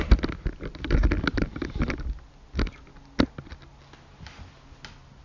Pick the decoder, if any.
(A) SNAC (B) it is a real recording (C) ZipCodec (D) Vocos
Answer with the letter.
B